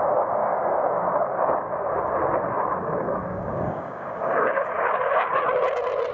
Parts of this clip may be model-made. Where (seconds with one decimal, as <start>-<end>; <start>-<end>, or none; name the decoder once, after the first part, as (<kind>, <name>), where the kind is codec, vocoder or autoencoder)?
0.4-1.9 (codec, DAC); 2.8-5.4

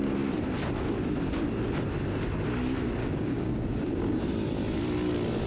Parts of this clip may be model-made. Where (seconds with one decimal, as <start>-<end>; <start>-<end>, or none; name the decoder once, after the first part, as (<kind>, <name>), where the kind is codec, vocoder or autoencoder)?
3.0-4.2 (codec, DAC)

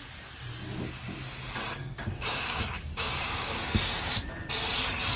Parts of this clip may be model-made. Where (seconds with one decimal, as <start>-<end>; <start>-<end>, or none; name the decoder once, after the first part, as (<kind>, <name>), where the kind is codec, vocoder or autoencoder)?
1.8-4.1 (codec, DAC)

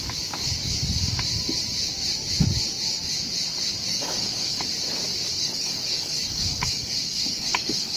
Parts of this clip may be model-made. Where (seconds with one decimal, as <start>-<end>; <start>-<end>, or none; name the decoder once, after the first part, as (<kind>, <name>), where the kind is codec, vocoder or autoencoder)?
3.9-4.7 (codec, DAC); 5.3-8.0

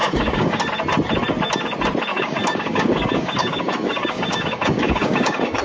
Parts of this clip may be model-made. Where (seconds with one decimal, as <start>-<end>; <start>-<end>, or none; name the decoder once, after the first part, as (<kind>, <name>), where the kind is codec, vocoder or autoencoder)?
0.0-0.6 (codec, DAC); 2.1-5.6

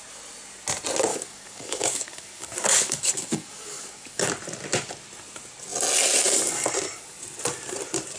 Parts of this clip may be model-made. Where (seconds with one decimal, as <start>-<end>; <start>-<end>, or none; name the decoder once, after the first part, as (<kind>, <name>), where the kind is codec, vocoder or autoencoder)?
1.1-4.3 (codec, DAC)